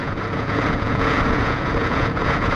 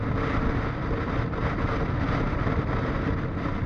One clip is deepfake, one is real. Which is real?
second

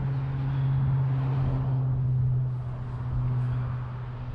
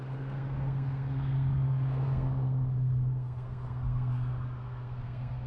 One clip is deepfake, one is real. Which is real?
first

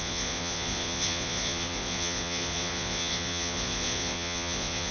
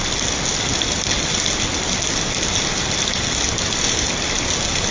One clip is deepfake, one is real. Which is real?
second